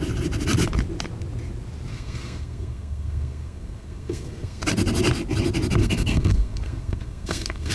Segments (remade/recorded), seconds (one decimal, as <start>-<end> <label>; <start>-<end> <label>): 0.0-1.9 recorded; 1.9-4.6 remade; 4.6-5.8 recorded; 5.8-7.7 remade